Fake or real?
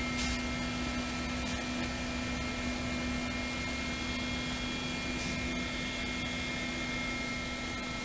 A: real